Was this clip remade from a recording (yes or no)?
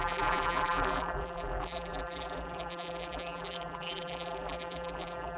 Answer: yes